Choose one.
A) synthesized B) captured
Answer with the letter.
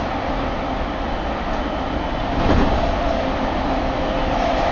B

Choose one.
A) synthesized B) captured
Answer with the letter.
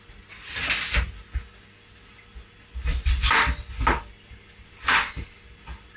B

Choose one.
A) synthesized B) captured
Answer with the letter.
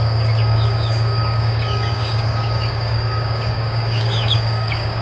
A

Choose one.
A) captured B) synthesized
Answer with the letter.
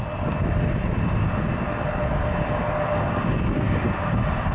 A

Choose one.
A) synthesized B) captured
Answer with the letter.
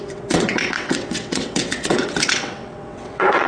A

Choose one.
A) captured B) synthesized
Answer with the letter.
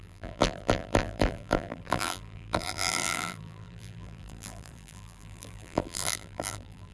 B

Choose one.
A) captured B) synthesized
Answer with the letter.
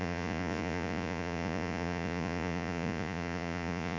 B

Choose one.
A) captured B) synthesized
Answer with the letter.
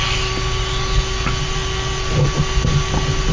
A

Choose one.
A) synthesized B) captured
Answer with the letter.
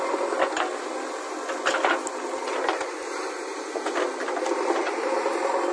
B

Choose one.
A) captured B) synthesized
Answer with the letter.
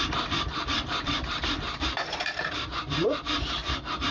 B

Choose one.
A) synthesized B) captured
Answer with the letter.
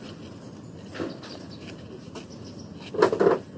B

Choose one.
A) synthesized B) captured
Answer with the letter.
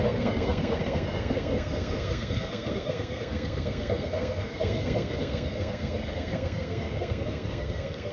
A